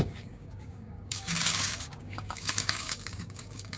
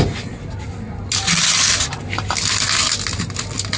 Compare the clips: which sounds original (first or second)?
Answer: second